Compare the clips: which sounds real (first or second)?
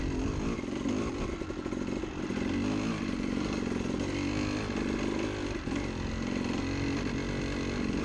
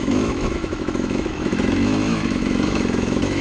first